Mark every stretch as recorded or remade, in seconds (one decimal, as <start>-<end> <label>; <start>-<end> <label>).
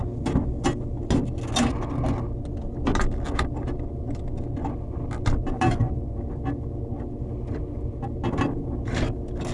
0.0-9.5 recorded